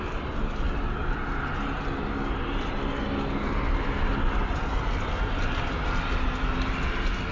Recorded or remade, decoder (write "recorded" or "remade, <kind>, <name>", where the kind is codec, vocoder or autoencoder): recorded